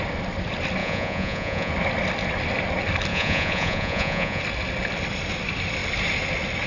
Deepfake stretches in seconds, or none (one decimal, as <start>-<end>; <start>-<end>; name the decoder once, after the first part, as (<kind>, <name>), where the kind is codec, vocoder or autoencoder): 0.8-1.7 (vocoder, Vocos); 3.1-4.4